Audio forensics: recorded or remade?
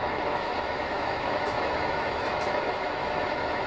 remade